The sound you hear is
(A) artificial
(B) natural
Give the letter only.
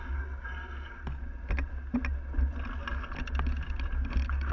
B